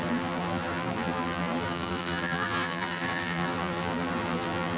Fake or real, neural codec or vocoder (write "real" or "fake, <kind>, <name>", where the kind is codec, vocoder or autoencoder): fake, vocoder, BigVGAN v2